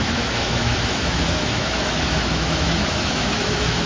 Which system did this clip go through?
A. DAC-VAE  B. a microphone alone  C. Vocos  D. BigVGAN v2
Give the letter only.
A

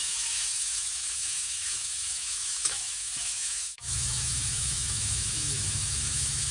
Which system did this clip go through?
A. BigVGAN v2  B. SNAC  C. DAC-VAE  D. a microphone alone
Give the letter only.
C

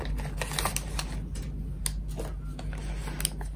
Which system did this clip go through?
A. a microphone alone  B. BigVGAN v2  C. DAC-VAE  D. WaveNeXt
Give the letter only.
A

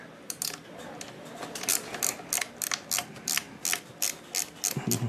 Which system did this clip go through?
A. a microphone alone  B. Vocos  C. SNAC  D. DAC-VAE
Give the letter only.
A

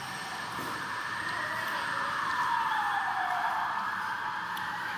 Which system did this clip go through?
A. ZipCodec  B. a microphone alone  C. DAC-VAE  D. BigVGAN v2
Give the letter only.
B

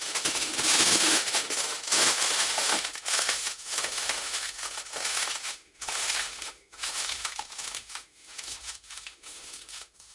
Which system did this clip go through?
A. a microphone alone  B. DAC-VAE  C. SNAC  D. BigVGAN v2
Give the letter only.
B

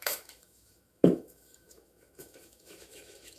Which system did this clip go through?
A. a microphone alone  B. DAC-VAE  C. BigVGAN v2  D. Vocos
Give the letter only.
B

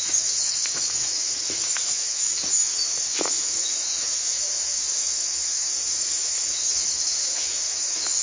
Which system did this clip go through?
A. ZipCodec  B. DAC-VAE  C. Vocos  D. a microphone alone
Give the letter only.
B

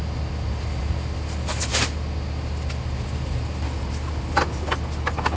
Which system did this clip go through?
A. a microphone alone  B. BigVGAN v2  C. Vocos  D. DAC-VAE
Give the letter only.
A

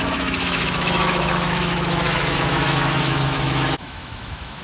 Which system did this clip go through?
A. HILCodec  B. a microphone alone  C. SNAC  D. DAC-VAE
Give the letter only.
D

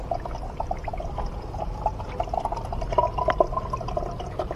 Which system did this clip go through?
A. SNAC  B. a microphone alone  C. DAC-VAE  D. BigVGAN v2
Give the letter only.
B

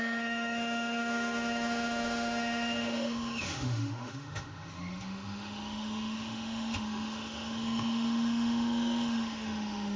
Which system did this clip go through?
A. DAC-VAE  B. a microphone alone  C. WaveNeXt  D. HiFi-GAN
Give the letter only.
A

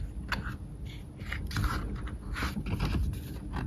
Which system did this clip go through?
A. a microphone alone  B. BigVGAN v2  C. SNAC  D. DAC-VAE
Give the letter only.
A